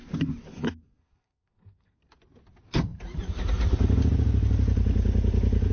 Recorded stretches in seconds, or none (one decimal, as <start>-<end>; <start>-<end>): 0.0-0.5; 2.0-5.7